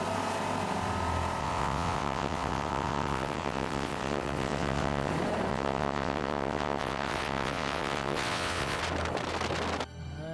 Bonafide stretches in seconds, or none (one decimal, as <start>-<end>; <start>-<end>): 0.0-1.4; 5.1-5.5; 8.8-10.3